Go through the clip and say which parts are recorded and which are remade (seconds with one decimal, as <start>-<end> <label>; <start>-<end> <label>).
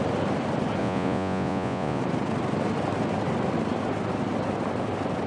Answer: 0.0-0.8 recorded; 0.8-2.0 remade; 2.0-5.3 recorded